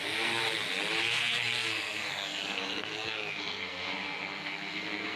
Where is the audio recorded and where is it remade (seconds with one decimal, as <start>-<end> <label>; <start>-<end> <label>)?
0.0-0.4 remade; 0.4-1.0 recorded; 1.0-5.2 remade